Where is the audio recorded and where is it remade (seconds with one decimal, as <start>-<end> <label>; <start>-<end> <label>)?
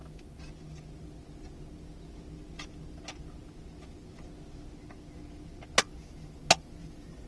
0.0-7.3 recorded